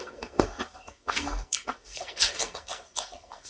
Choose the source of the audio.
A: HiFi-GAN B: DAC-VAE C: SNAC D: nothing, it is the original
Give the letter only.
C